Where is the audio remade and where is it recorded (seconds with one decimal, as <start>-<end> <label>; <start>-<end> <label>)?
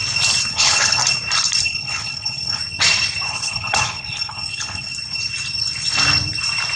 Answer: 0.0-0.5 recorded; 0.5-1.0 remade; 1.0-1.6 recorded; 1.6-2.6 remade; 2.6-3.3 recorded; 3.3-4.9 remade; 4.9-6.8 recorded